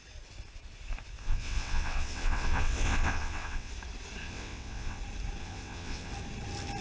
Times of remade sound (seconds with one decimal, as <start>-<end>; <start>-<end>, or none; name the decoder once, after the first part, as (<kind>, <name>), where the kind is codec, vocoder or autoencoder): 1.2-3.7 (vocoder, WaveNeXt); 4.2-5.0; 5.4-6.1